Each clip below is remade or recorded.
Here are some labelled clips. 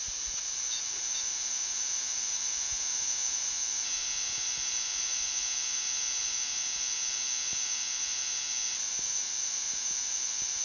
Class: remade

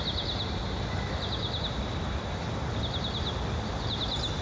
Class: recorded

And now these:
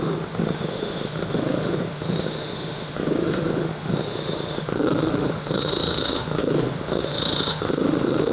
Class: remade